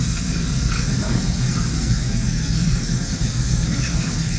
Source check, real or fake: fake